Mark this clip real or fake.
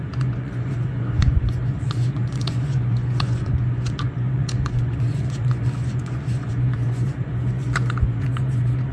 fake